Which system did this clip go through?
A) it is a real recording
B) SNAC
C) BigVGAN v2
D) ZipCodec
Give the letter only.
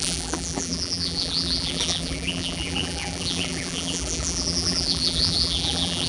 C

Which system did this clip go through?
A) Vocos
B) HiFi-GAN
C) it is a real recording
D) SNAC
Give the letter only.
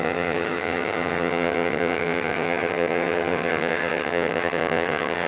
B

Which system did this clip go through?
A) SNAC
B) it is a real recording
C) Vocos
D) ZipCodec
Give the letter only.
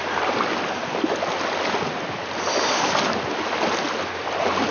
B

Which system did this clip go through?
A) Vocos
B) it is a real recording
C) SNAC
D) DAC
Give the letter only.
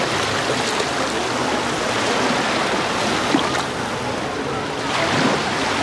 B